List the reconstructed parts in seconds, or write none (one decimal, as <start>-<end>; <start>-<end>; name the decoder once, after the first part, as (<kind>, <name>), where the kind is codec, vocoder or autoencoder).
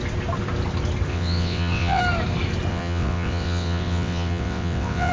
1.1-2.0 (vocoder, WaveNeXt); 2.7-5.1